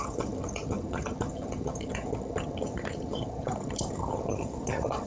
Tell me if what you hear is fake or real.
fake